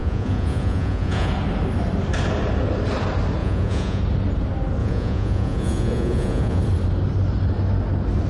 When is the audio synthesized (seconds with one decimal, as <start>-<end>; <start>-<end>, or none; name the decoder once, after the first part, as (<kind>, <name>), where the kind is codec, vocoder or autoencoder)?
0.0-1.3 (vocoder, Vocos); 3.4-4.0; 4.8-6.6